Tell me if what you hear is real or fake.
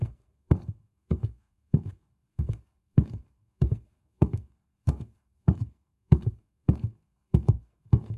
fake